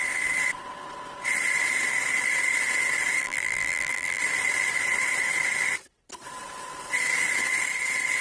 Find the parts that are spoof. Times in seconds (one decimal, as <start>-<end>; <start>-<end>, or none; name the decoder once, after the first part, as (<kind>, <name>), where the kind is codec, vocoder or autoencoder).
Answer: 3.2-4.2 (vocoder, BigVGAN v2)